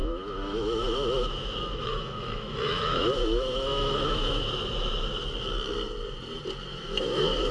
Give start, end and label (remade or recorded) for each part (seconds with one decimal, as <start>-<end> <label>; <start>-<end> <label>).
0.0-4.5 remade; 4.5-6.7 recorded; 6.7-7.5 remade